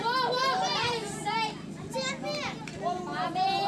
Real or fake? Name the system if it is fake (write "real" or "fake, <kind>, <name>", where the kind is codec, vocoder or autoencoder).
real